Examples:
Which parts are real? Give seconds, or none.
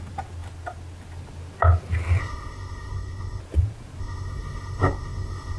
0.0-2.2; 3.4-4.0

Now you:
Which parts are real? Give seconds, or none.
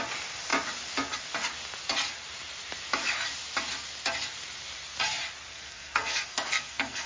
0.0-5.5